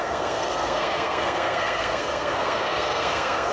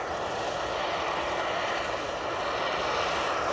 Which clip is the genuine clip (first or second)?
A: second